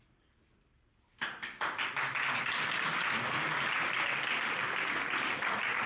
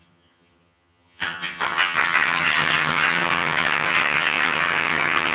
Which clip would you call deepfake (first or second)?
second